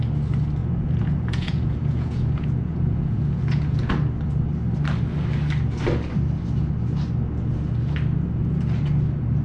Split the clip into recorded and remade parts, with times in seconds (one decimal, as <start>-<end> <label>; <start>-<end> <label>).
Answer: 0.0-0.6 recorded; 0.6-3.9 remade; 3.9-9.4 recorded